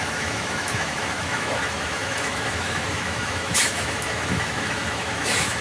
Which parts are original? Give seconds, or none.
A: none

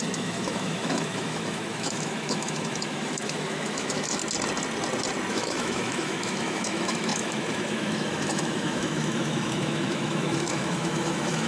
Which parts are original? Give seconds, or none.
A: 4.2-5.3